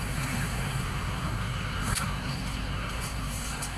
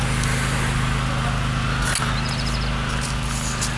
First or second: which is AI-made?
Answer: first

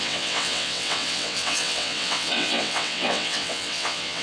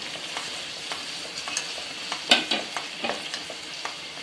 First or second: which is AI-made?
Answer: first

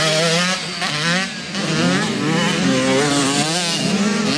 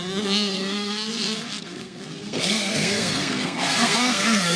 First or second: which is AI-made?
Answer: second